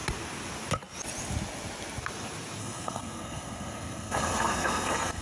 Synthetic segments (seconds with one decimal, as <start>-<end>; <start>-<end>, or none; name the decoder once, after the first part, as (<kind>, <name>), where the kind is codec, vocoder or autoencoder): 2.6-5.2 (codec, SNAC)